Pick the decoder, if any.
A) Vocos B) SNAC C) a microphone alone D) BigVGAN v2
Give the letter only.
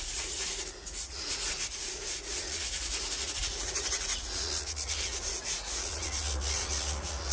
A